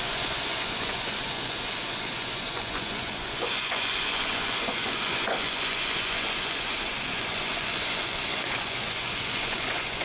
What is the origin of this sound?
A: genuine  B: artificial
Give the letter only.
B